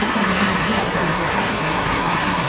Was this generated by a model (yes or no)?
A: yes